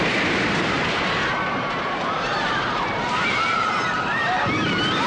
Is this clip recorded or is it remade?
remade